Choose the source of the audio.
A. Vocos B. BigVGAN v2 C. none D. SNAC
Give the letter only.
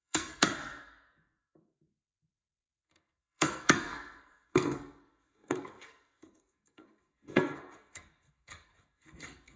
D